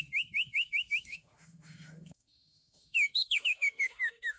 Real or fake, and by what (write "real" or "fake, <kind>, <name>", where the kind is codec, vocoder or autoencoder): fake, autoencoder, DAC-VAE